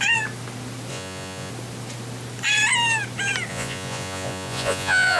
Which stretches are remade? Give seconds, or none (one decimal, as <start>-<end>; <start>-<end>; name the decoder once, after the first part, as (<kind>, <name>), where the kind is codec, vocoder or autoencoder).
0.9-1.5 (vocoder, Vocos); 3.5-5.2